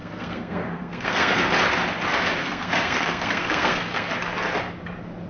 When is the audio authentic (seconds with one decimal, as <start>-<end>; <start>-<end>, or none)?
1.4-2.4; 4.1-5.3